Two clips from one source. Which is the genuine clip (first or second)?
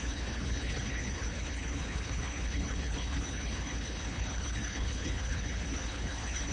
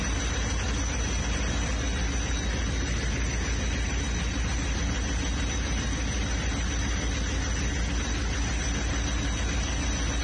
second